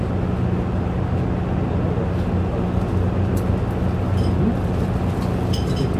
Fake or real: real